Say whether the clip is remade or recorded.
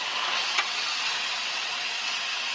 remade